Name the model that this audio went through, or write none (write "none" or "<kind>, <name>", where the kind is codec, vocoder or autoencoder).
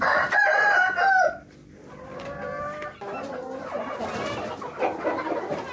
none